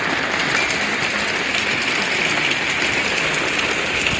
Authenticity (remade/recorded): recorded